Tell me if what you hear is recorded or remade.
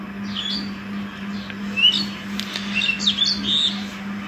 recorded